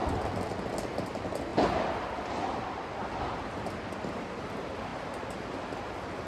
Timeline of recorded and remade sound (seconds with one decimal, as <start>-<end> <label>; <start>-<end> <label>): 0.0-6.3 recorded